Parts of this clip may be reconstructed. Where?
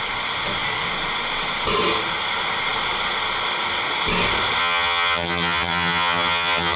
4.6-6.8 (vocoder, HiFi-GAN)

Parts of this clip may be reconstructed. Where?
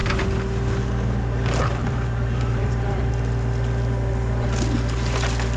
1.8-3.1 (vocoder, BigVGAN v2)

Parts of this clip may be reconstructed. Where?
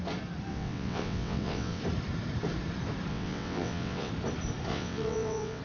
0.5-1.8 (vocoder, WaveNeXt); 3.1-4.1; 4.7-5.6